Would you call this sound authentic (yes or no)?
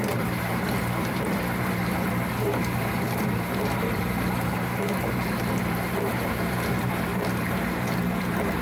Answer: no